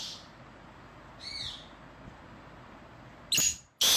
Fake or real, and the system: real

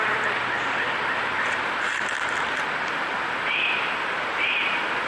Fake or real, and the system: real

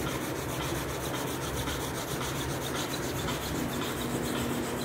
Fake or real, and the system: real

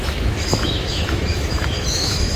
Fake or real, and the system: fake, autoencoder, DAC-VAE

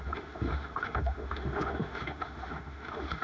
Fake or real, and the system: fake, autoencoder, DAC-VAE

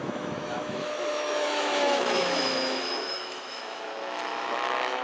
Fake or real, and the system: fake, autoencoder, DAC-VAE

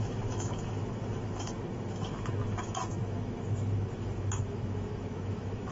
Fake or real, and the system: fake, autoencoder, DAC-VAE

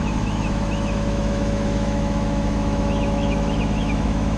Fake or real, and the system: fake, autoencoder, DAC-VAE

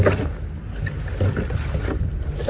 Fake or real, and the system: real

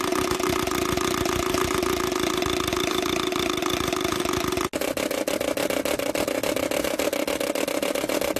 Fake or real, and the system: real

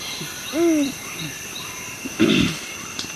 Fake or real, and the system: real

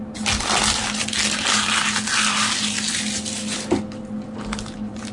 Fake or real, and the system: real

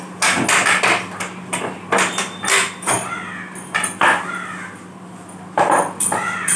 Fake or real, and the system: real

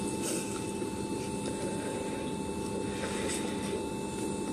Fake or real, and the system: real